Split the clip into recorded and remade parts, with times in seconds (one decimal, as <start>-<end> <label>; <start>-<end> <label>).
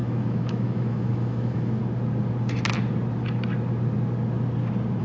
0.0-1.8 remade; 1.8-5.0 recorded